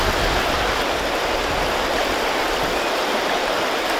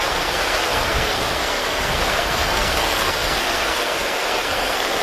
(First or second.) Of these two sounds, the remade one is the second